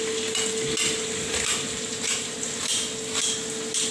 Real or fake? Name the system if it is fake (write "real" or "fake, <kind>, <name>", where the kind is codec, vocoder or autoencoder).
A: real